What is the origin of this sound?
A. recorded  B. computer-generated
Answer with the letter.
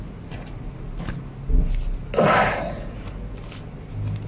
A